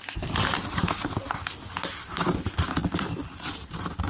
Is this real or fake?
real